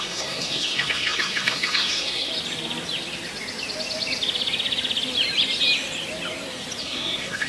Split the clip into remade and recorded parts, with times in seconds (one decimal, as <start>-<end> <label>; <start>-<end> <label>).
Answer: 0.0-2.3 remade; 2.3-6.8 recorded; 6.8-7.5 remade